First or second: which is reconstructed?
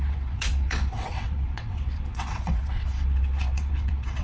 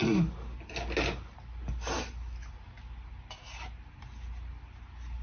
first